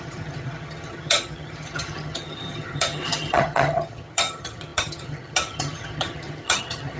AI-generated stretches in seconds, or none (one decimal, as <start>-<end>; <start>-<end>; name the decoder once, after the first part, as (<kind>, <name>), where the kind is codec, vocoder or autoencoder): 0.0-7.0 (vocoder, HiFi-GAN)